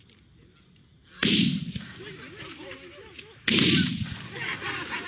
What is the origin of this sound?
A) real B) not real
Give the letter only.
A